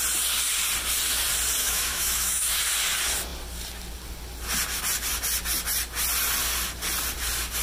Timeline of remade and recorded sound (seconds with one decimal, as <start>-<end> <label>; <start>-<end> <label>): 0.0-1.6 recorded; 1.6-2.6 remade; 2.6-7.6 recorded